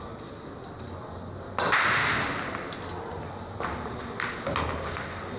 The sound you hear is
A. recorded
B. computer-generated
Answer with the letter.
A